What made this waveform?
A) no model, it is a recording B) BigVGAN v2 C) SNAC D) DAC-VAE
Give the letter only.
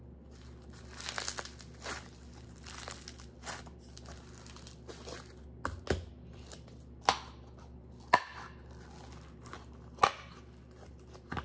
A